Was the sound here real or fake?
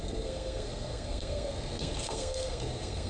fake